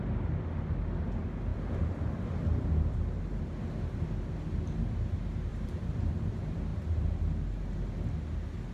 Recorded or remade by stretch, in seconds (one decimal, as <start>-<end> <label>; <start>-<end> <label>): 0.0-1.5 recorded; 1.5-3.2 remade; 3.2-5.5 recorded; 5.5-6.1 remade; 6.1-8.7 recorded